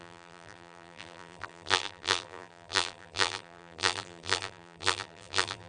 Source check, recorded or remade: remade